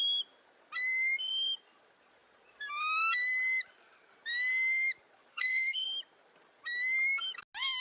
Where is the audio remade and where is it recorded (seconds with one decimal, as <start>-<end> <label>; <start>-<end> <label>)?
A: 0.0-5.3 recorded; 5.3-5.9 remade; 5.9-7.8 recorded